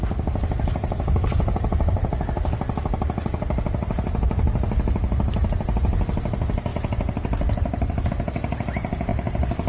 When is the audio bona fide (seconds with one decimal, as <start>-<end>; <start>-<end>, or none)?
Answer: 0.0-9.7